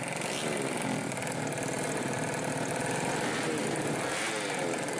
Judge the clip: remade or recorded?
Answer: recorded